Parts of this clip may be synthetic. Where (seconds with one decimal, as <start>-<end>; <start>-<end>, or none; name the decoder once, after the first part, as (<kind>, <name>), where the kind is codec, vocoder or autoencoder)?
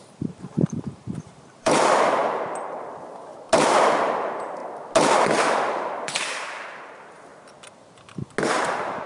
0.0-3.3 (vocoder, BigVGAN v2); 4.0-4.6; 5.1-7.3; 8.5-9.1